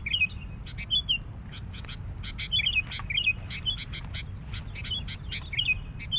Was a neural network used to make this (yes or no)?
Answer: no